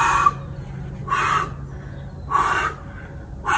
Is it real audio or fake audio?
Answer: real